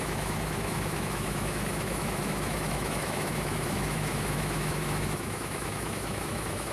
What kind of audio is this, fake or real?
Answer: fake